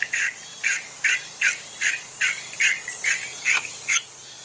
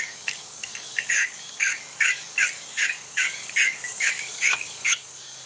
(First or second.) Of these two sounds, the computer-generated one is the second